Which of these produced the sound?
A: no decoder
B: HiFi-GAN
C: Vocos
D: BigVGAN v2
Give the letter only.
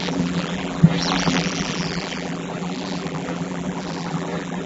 D